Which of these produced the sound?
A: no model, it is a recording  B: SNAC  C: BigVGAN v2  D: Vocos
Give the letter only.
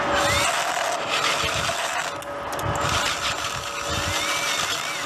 A